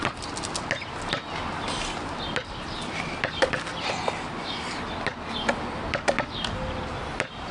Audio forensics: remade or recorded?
recorded